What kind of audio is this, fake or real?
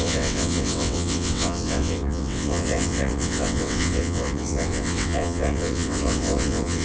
fake